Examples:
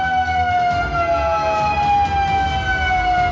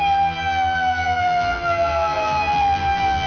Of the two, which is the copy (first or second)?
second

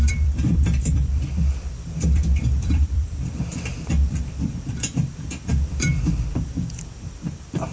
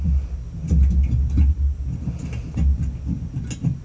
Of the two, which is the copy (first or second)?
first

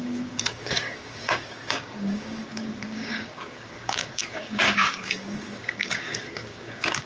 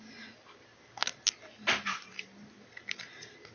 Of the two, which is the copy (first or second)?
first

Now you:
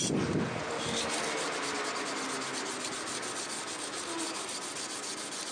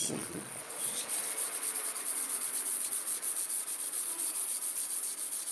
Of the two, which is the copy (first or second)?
second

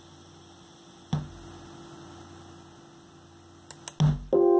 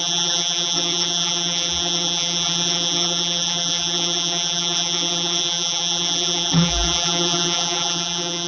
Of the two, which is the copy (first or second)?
second